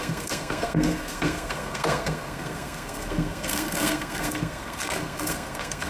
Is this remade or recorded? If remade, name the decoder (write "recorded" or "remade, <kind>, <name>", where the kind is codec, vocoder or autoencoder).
remade, codec, SNAC